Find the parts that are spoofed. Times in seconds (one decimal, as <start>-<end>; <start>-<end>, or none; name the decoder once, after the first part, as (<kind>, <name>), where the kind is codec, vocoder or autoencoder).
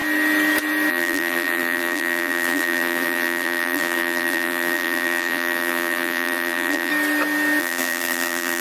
0.9-6.9 (vocoder, BigVGAN v2); 7.6-8.6